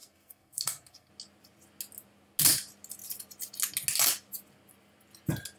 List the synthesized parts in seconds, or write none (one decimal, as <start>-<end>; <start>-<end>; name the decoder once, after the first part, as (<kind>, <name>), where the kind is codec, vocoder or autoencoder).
0.0-1.1 (codec, SNAC)